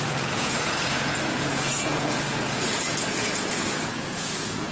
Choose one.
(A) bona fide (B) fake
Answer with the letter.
B